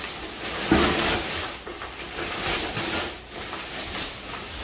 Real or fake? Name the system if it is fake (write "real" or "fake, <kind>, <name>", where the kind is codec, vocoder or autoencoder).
real